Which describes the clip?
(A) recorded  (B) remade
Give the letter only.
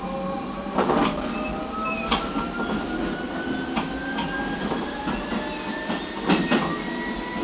A